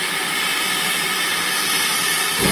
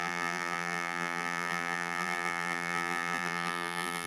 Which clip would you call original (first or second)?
first